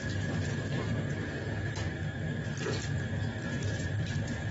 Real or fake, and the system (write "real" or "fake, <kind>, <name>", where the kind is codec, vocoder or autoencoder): real